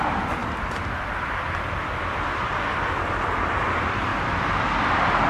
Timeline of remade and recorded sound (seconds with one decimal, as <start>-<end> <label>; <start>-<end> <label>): 0.0-0.4 recorded; 0.4-3.6 remade; 3.6-4.1 recorded; 4.1-4.6 remade; 4.6-5.3 recorded